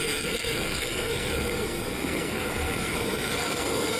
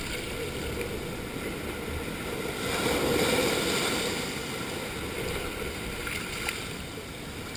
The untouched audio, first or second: second